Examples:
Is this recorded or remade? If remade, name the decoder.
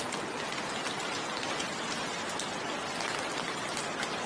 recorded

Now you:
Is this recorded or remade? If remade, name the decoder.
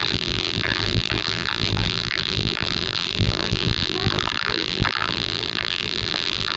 remade, vocoder, BigVGAN v2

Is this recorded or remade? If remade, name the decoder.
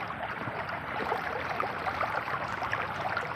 remade, vocoder, BigVGAN v2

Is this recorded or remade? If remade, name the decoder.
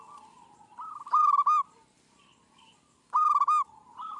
recorded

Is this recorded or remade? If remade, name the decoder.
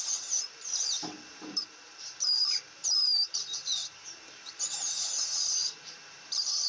remade, vocoder, BigVGAN v2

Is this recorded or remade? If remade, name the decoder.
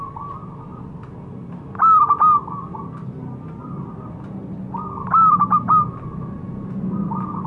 recorded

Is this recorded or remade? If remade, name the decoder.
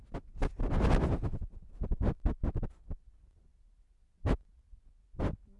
recorded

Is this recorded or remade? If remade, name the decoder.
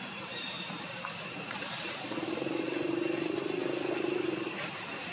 remade, vocoder, BigVGAN v2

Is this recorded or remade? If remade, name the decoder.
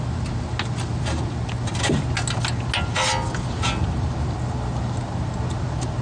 recorded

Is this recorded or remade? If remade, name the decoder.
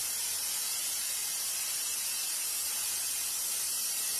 remade, vocoder, BigVGAN v2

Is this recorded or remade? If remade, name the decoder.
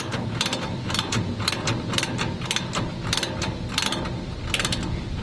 recorded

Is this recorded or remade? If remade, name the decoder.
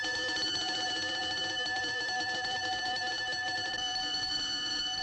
remade, vocoder, BigVGAN v2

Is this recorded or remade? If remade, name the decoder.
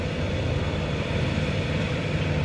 remade, vocoder, BigVGAN v2